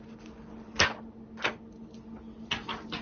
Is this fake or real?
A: real